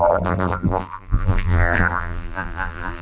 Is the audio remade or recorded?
remade